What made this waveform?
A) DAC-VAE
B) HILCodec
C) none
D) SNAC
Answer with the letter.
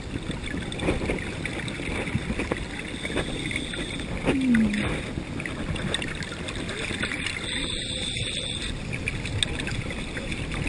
C